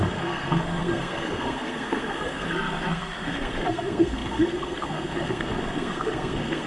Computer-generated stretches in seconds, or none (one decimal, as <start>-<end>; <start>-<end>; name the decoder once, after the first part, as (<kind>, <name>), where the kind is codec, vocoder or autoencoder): 0.0-6.7 (codec, SNAC)